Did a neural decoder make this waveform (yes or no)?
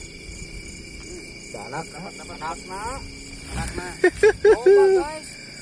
no